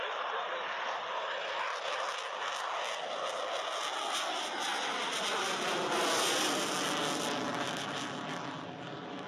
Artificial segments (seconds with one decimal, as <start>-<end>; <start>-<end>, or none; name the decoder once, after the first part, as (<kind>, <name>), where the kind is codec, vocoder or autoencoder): 4.7-6.7 (vocoder, BigVGAN v2)